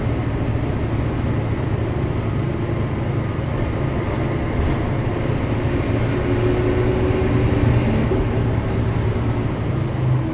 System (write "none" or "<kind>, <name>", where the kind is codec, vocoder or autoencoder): none